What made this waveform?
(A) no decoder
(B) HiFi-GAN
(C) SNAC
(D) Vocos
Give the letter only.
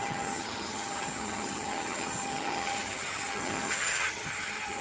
B